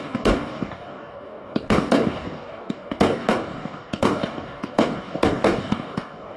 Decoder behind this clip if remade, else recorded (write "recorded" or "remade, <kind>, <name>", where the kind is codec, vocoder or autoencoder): remade, codec, DAC